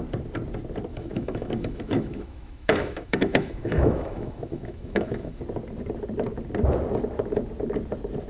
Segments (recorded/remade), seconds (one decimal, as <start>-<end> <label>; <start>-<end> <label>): 0.0-0.9 recorded; 0.9-5.4 remade; 5.4-8.3 recorded

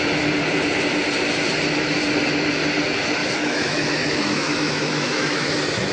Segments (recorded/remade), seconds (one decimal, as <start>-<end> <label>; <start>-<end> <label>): 0.0-3.2 recorded; 3.2-5.5 remade; 5.5-5.9 recorded